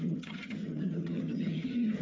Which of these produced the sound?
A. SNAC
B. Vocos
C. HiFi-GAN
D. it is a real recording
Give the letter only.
C